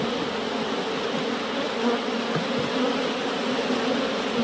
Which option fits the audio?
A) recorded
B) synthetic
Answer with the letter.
A